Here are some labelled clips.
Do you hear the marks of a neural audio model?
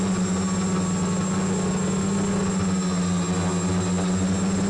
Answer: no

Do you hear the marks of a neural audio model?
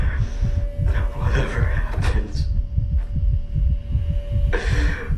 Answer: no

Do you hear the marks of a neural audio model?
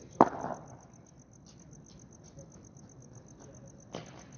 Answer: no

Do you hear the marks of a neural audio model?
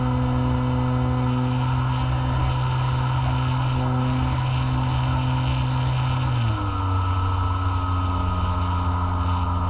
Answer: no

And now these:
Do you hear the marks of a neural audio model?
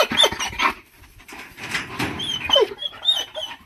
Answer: no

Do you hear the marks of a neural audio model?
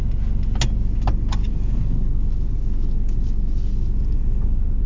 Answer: no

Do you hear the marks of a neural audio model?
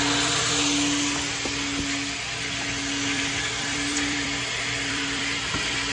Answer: yes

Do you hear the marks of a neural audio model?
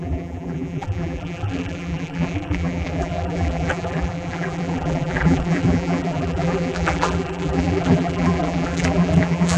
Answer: yes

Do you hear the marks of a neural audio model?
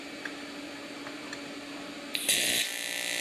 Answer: no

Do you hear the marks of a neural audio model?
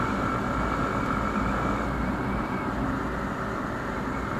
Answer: no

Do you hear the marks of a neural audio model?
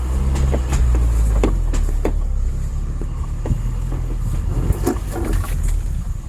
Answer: no